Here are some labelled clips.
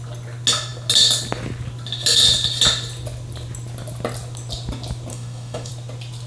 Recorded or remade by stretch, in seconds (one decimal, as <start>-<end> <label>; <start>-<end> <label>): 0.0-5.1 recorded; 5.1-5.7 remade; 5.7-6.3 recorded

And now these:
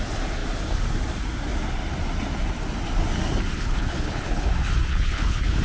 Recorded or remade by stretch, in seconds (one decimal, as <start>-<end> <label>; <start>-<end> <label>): 0.0-3.5 recorded; 3.5-4.5 remade; 4.5-4.9 recorded; 4.9-5.6 remade

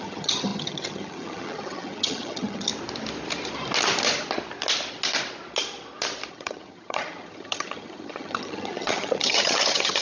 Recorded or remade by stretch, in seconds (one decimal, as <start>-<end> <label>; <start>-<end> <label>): 0.0-2.7 remade; 2.7-6.3 recorded; 6.3-10.0 remade

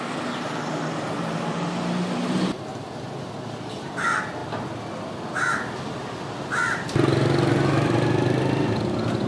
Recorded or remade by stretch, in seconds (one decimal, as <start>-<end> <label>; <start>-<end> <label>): 0.0-2.7 recorded; 2.7-3.3 remade; 3.3-9.3 recorded

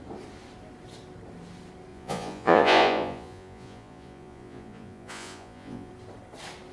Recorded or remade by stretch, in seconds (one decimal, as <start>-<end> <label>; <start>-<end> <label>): 0.0-1.9 recorded; 1.9-5.9 remade; 5.9-6.7 recorded

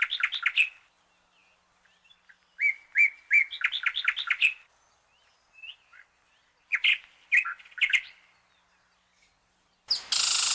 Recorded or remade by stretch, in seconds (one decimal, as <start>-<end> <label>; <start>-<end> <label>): 0.0-10.5 recorded

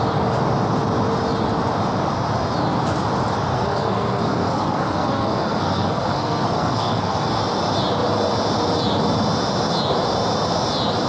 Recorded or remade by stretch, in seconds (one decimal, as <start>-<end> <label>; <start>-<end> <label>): 0.0-3.5 recorded; 3.5-7.4 remade; 7.4-11.1 recorded

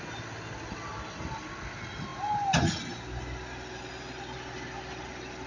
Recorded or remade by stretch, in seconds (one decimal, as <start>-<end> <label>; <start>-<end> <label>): 0.0-0.9 recorded; 0.9-1.5 remade; 1.5-5.5 recorded